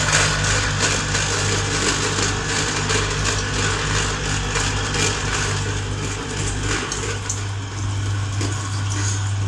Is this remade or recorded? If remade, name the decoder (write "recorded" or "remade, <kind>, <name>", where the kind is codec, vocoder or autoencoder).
recorded